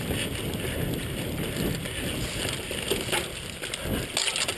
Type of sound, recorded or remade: recorded